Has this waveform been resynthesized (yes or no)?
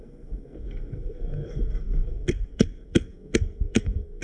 yes